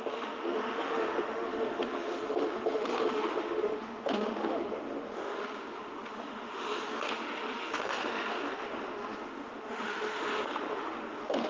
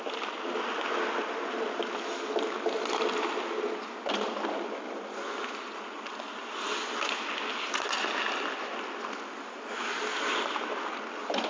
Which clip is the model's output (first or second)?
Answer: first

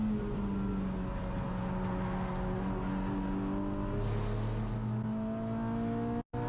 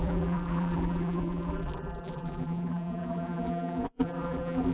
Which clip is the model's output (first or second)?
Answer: second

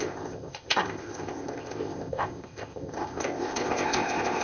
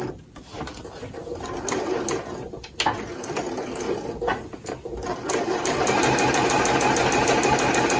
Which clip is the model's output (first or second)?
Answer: first